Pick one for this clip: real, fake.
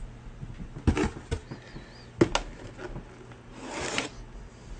real